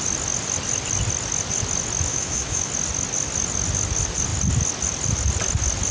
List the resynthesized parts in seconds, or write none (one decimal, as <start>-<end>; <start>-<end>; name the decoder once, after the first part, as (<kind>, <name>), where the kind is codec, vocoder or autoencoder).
2.1-2.7 (autoencoder, DAC-VAE)